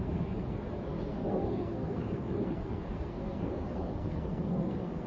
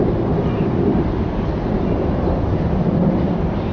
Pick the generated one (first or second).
first